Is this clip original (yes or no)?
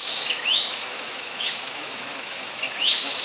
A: no